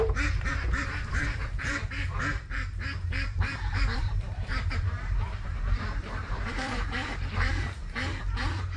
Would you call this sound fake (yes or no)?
yes